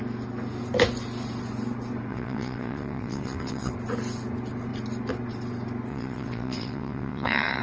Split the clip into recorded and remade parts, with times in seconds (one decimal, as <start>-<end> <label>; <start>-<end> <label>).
0.0-2.1 recorded; 2.1-3.7 remade; 3.7-5.9 recorded; 5.9-7.6 remade